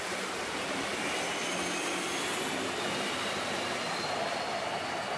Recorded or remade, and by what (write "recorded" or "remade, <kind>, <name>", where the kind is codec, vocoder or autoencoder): recorded